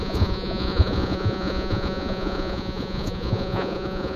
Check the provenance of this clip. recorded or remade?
remade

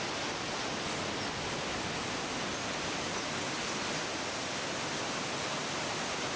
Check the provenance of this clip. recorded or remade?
recorded